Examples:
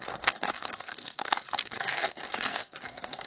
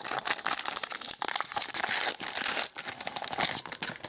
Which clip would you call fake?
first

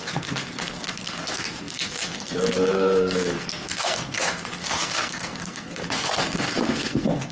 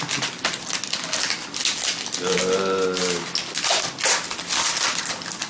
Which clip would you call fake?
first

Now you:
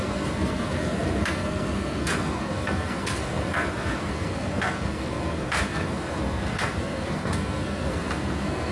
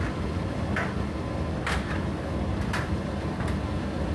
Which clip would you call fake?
first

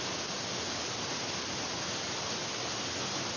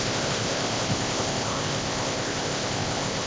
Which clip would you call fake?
second